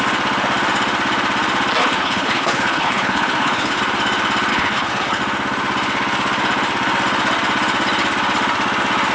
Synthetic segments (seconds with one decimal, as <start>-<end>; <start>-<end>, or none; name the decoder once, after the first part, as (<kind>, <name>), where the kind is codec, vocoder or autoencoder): 1.8-3.8 (codec, HILCodec); 4.5-5.2